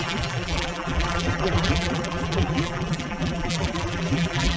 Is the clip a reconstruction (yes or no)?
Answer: yes